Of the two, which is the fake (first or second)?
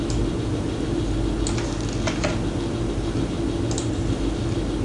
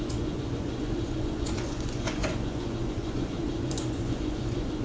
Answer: second